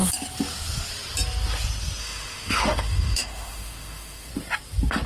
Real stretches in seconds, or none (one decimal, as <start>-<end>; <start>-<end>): 0.0-2.0; 4.3-5.1